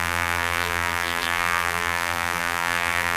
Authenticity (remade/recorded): remade